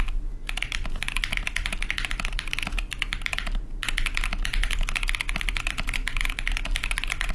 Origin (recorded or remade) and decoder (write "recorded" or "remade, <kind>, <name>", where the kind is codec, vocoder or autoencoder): recorded